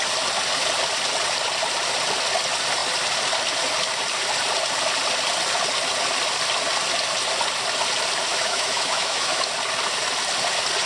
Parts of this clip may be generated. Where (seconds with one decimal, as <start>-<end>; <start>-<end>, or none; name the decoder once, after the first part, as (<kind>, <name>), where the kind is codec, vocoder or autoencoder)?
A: 8.3-9.5 (autoencoder, DAC-VAE)